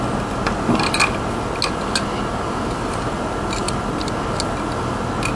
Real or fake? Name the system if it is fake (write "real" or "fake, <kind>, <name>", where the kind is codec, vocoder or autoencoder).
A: real